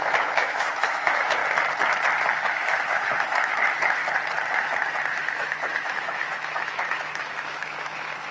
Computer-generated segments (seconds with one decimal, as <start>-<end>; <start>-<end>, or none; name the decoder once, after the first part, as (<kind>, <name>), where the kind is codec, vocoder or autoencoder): 0.0-1.4 (autoencoder, DAC-VAE); 2.3-4.0; 4.5-8.3